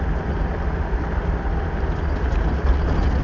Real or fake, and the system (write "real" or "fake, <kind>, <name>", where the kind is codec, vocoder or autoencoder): real